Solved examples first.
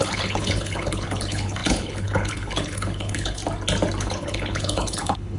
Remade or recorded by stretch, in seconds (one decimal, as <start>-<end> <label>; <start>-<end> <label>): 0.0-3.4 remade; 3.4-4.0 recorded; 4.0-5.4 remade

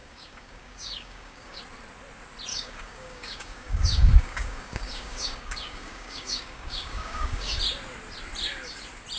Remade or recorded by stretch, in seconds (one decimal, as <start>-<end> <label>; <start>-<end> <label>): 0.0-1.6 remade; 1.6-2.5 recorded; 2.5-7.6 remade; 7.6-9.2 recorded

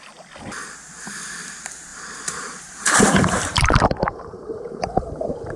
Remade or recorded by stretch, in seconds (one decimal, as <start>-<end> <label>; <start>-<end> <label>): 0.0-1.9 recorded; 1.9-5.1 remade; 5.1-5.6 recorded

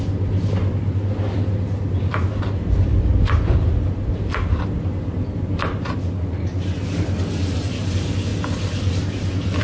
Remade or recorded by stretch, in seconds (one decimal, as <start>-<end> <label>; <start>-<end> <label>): 0.0-9.6 recorded

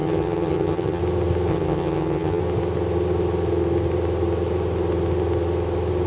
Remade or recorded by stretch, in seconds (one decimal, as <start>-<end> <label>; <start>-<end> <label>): 0.0-1.0 remade; 1.0-1.5 recorded; 1.5-2.4 remade; 2.4-6.1 recorded

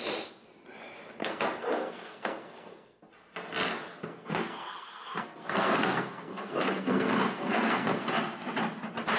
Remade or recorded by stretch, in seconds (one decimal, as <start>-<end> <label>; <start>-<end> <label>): 0.0-1.2 recorded; 1.2-3.1 remade; 3.1-3.9 recorded; 3.9-8.1 remade; 8.1-9.2 recorded